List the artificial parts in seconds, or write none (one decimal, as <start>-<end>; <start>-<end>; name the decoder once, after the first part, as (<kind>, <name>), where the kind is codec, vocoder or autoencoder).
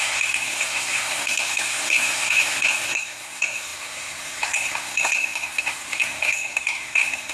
0.0-7.3 (codec, SNAC)